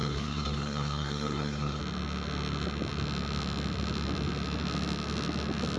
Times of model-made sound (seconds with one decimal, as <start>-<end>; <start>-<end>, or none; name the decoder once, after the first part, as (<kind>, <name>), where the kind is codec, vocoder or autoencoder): 0.0-1.8 (codec, SNAC)